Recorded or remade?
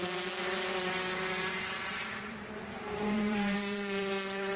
remade